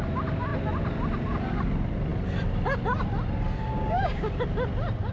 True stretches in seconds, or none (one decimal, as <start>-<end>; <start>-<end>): 0.0-3.7; 4.3-5.1